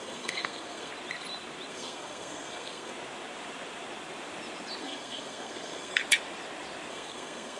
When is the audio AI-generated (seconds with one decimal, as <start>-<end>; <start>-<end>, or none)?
0.0-0.9; 1.7-2.9; 4.8-6.0; 6.9-7.6